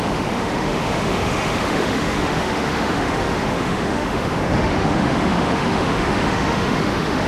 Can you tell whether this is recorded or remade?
remade